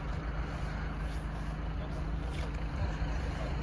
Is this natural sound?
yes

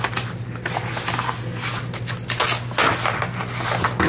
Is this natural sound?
yes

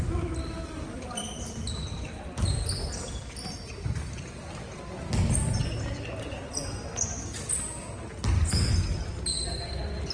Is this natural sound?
yes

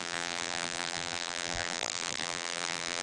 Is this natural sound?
no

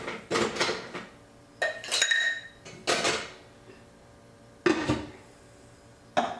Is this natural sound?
yes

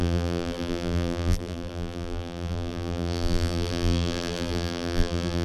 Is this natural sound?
no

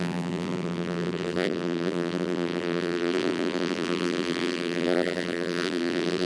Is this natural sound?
no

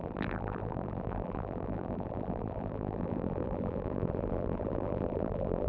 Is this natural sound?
no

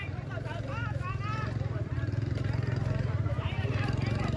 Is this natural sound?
no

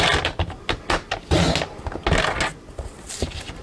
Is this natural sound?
yes